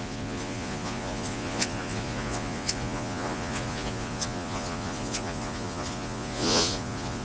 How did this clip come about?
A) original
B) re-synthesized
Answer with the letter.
B